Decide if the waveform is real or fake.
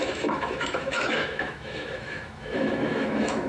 fake